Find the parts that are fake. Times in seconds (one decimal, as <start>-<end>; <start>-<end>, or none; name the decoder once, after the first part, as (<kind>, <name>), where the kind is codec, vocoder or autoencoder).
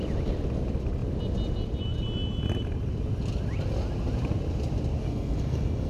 5.0-5.9 (codec, SNAC)